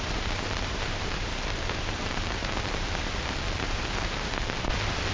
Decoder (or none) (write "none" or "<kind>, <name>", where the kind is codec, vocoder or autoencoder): vocoder, BigVGAN v2